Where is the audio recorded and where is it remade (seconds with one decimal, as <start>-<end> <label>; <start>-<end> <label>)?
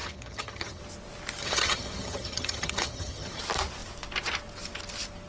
0.0-0.8 remade; 0.8-1.4 recorded; 1.4-3.4 remade; 3.4-5.3 recorded